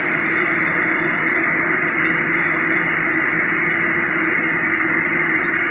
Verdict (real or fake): real